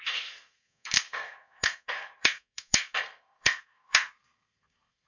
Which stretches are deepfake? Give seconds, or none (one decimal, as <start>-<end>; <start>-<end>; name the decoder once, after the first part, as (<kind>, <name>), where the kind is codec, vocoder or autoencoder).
0.0-5.1 (codec, SNAC)